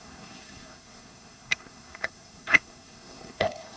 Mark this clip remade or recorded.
remade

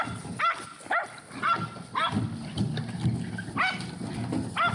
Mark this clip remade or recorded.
recorded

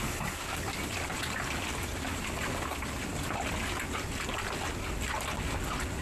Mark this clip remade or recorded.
recorded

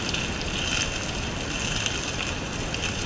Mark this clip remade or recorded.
recorded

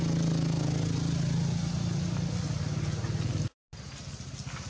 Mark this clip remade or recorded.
recorded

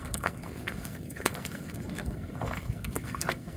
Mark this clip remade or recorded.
remade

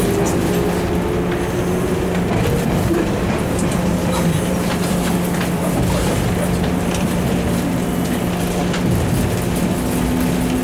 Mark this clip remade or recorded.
recorded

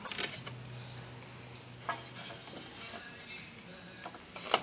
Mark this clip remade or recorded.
recorded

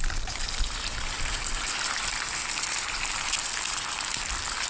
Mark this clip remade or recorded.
recorded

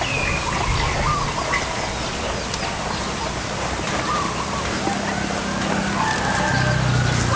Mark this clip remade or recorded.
recorded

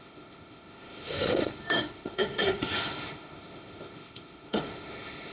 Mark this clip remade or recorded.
remade